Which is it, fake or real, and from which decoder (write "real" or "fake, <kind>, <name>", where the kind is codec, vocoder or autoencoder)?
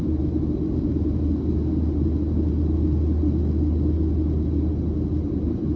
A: real